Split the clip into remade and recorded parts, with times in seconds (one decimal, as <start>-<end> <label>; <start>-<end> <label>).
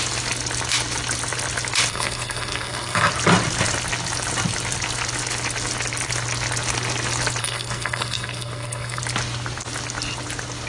0.0-1.9 recorded; 1.9-3.1 remade; 3.1-7.4 recorded; 7.4-9.0 remade; 9.0-10.7 recorded